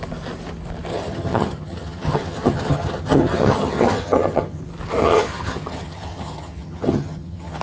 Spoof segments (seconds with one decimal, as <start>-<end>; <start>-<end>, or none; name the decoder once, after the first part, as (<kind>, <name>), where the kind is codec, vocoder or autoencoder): 0.9-4.6 (vocoder, HiFi-GAN); 5.0-7.6